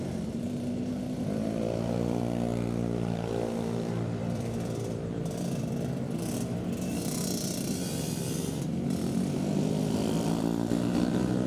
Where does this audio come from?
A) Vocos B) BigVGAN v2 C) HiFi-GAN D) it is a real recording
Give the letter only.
B